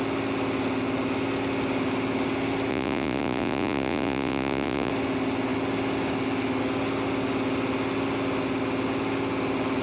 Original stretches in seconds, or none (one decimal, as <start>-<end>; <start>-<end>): 0.0-2.7; 4.9-9.8